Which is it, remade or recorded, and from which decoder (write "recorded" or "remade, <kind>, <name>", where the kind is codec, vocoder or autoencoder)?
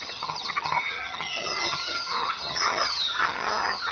remade, vocoder, HiFi-GAN